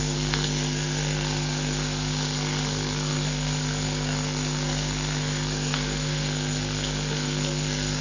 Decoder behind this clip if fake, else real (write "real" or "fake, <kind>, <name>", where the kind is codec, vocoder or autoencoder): fake, codec, SNAC